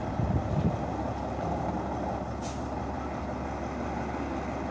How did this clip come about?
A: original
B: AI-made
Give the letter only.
A